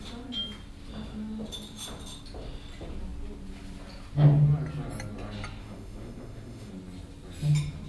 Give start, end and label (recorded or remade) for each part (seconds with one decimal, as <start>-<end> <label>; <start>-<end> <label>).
0.0-5.6 recorded; 5.6-6.7 remade; 6.7-7.9 recorded